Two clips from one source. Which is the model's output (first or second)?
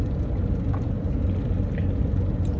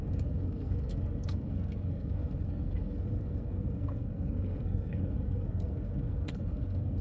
second